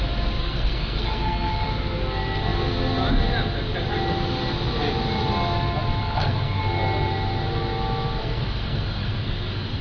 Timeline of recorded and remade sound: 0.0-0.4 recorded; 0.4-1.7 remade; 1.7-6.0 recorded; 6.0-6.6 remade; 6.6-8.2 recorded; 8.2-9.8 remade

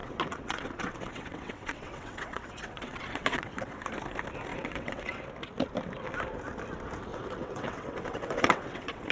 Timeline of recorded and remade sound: 0.0-3.8 remade; 3.8-4.5 recorded; 4.5-5.2 remade; 5.2-7.1 recorded; 7.1-9.1 remade

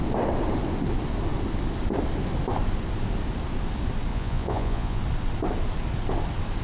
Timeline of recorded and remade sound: 0.0-4.1 recorded; 4.1-5.0 remade; 5.0-6.6 recorded